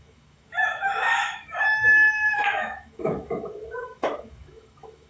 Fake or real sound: fake